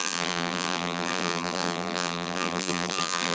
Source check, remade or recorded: remade